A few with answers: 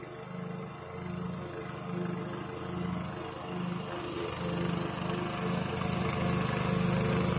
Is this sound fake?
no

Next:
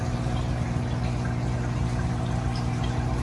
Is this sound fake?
no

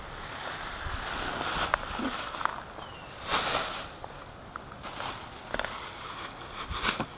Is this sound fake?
no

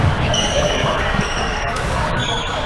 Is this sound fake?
yes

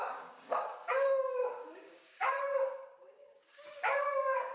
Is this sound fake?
yes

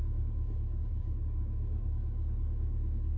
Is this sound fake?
yes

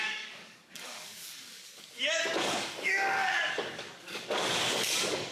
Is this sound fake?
yes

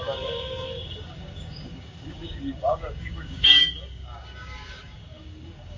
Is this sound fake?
yes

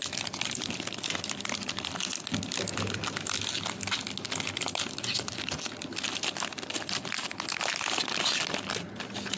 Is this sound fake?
no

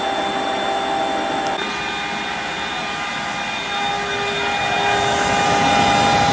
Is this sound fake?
no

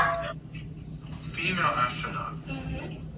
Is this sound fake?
no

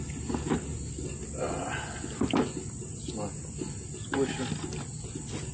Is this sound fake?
no